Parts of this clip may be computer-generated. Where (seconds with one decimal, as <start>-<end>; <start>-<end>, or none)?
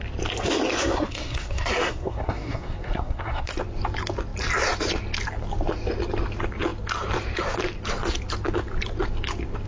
0.8-3.5